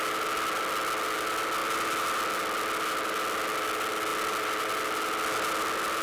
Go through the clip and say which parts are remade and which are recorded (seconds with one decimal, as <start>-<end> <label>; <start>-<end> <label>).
0.0-6.0 recorded